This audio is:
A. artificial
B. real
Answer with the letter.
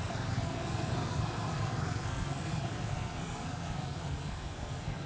A